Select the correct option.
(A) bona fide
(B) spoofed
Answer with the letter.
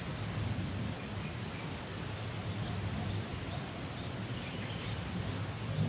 A